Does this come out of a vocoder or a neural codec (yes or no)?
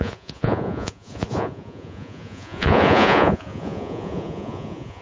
yes